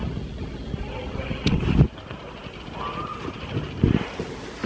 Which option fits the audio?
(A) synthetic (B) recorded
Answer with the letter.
B